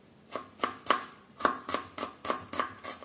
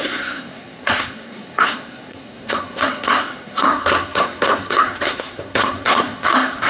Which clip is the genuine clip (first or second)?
first